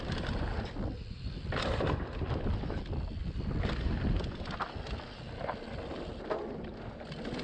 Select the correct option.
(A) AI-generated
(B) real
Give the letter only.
B